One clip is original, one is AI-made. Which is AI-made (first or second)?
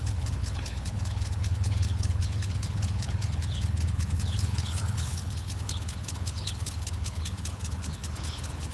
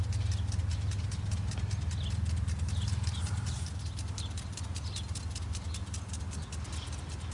first